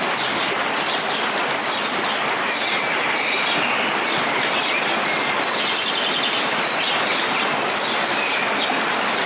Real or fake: real